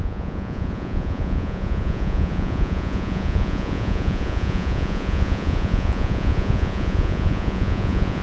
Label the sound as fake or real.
fake